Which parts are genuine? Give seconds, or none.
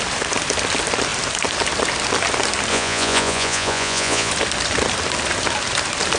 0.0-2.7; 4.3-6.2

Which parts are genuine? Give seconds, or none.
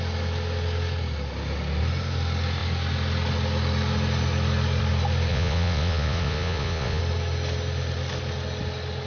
0.0-5.3; 7.0-9.1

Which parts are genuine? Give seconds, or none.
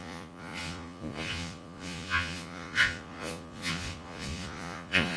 none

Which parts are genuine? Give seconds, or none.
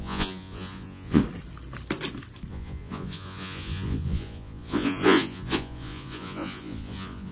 1.2-2.5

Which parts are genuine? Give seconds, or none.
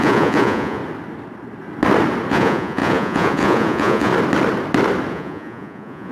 0.8-2.3; 4.1-5.1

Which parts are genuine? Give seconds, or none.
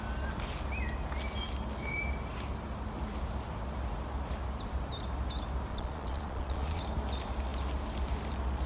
0.0-5.7; 6.8-8.7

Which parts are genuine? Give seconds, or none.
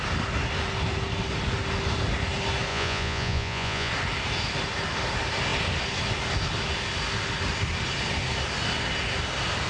0.0-2.7; 3.9-9.7